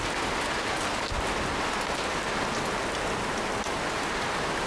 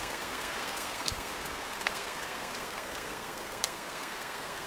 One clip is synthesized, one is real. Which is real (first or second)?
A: first